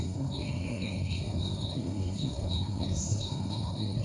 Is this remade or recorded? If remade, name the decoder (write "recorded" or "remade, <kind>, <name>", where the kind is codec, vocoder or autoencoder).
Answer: remade, codec, SNAC